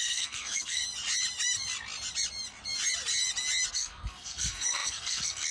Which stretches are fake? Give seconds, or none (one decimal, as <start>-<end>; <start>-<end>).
0.0-0.8; 3.7-5.5